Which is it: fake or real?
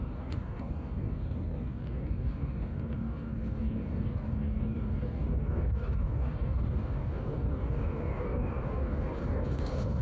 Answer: fake